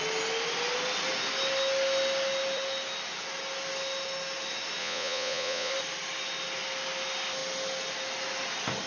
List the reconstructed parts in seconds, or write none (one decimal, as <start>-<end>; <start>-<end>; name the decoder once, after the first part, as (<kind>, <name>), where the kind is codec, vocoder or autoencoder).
4.8-5.7 (vocoder, Vocos)